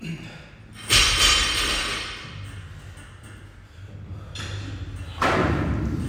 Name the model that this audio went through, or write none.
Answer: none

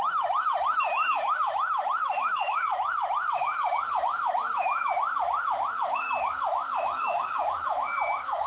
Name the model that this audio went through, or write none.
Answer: autoencoder, DAC-VAE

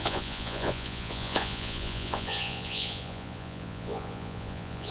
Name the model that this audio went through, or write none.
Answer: vocoder, Vocos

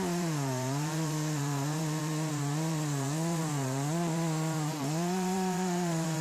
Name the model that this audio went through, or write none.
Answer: vocoder, BigVGAN v2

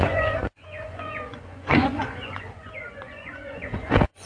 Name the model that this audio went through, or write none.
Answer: vocoder, Vocos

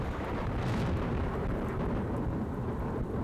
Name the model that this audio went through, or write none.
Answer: vocoder, BigVGAN v2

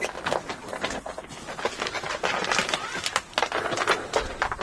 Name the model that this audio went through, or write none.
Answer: none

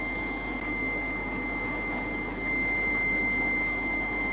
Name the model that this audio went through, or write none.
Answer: autoencoder, DAC-VAE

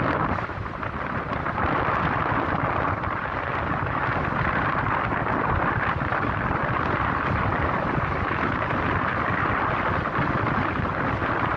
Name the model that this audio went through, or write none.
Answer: none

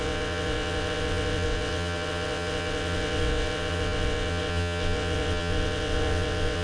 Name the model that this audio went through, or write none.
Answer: vocoder, WaveNeXt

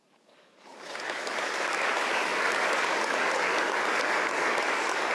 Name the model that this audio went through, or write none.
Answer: codec, DAC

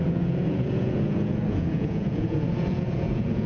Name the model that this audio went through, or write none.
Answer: vocoder, Vocos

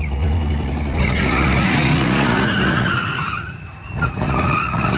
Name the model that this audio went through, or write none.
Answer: vocoder, Vocos